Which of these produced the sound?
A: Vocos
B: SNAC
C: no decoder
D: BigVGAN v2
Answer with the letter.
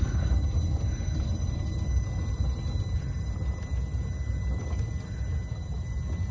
C